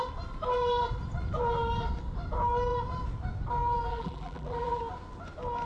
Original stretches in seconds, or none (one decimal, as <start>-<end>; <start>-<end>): 0.0-3.9; 4.8-5.7